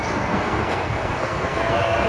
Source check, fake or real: fake